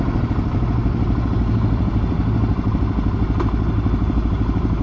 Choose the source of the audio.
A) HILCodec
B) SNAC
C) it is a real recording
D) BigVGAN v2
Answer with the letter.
C